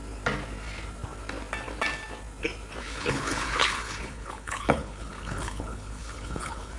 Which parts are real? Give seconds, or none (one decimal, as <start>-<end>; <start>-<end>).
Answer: 0.0-2.8